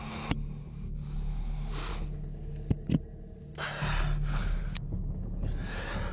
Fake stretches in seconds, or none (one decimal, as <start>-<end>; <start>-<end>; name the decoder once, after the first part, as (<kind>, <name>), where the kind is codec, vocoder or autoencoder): 1.9-2.5 (codec, HILCodec); 4.3-5.2